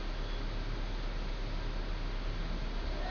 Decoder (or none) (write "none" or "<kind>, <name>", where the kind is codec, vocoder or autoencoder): none